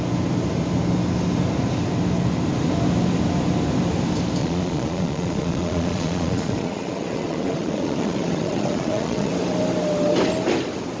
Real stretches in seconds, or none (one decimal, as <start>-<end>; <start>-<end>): 0.0-4.4; 9.3-11.0